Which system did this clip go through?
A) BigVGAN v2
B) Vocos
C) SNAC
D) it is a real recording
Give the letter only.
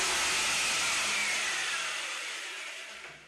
D